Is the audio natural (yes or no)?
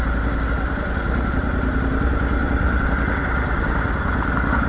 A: yes